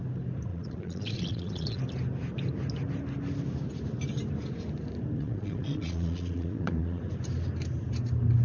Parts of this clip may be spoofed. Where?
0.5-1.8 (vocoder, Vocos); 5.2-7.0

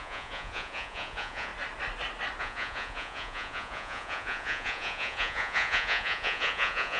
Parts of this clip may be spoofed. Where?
0.0-1.5 (vocoder, Vocos); 2.4-7.0

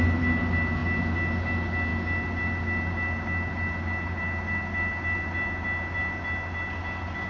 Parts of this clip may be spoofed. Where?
none

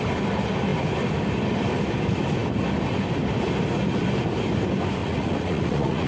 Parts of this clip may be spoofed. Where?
5.0-6.1 (vocoder, Vocos)